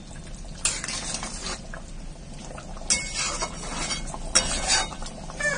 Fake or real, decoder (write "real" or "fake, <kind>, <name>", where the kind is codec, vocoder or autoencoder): real